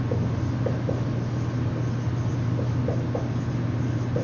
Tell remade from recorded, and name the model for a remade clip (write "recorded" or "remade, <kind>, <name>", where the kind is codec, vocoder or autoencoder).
recorded